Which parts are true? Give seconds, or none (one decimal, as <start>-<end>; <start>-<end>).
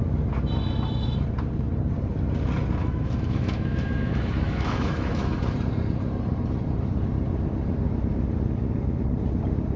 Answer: 0.0-2.8; 5.4-9.8